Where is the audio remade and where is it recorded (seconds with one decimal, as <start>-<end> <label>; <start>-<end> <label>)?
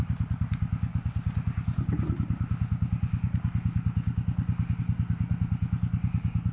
0.0-6.5 recorded